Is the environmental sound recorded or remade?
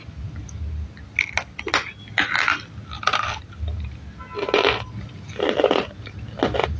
recorded